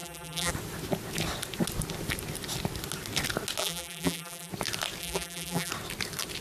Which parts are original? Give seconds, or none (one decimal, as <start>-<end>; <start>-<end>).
0.5-3.6; 4.5-5.0; 5.7-6.4